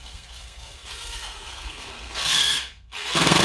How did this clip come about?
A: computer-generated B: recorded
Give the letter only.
A